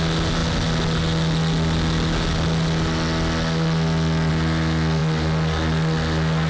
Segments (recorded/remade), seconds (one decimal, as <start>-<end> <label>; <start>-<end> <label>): 0.0-6.5 recorded